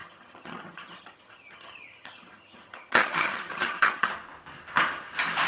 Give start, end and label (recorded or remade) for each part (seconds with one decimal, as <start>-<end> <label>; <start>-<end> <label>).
0.0-4.1 remade; 4.1-5.5 recorded